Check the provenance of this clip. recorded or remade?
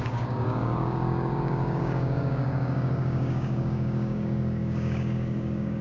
remade